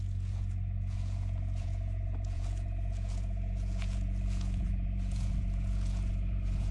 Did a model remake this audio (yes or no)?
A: yes